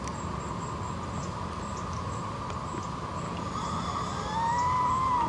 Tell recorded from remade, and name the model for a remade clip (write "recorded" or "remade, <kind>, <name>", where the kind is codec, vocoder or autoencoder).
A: recorded